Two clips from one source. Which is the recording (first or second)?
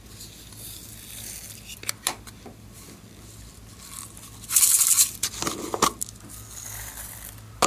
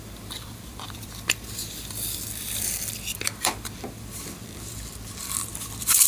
first